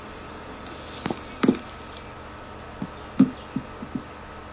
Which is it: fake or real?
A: real